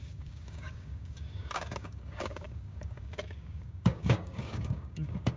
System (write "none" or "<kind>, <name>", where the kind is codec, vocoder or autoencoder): codec, DAC